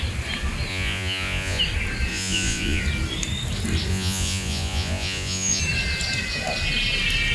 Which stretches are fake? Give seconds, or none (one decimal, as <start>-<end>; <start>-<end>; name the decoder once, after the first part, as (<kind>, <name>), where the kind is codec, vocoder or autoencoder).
0.7-1.6 (vocoder, Vocos); 2.1-2.8; 3.9-5.6